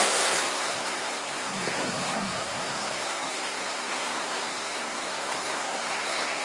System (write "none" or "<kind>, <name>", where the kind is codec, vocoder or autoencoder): codec, SNAC